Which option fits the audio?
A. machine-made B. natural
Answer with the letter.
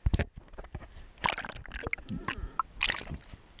B